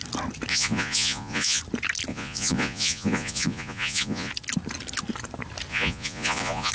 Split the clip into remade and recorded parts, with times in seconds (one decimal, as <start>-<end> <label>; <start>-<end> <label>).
0.0-0.5 recorded; 0.5-1.6 remade; 1.6-2.1 recorded; 2.1-4.3 remade; 4.3-5.7 recorded; 5.7-6.7 remade